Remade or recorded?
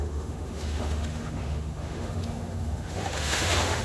remade